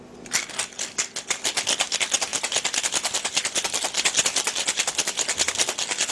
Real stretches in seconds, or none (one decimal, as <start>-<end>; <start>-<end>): 0.0-2.3